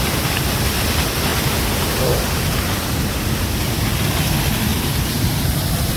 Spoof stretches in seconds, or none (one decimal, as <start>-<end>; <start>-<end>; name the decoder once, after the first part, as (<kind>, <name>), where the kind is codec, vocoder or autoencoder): 1.3-3.1 (vocoder, BigVGAN v2); 4.7-6.0